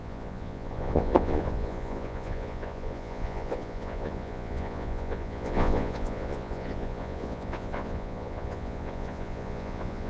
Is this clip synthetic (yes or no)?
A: yes